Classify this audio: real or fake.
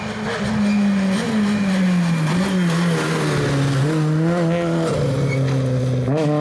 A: real